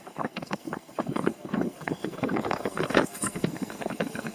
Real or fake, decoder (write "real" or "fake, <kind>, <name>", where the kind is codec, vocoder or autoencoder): fake, codec, SNAC